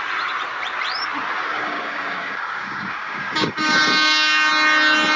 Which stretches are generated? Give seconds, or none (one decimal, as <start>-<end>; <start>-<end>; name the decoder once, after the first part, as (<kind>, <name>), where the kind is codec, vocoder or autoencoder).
1.5-4.5 (codec, DAC)